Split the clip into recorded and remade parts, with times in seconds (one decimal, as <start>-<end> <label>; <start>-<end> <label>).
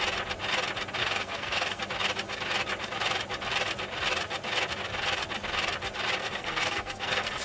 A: 0.0-1.0 recorded; 1.0-1.8 remade; 1.8-6.2 recorded; 6.2-7.4 remade